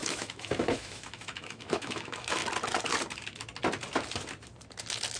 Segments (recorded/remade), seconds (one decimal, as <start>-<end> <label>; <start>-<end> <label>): 0.0-2.4 remade; 2.4-5.2 recorded